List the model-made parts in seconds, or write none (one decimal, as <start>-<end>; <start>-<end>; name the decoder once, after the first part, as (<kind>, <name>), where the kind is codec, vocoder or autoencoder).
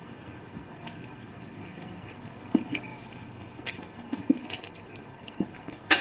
0.0-6.0 (codec, SNAC)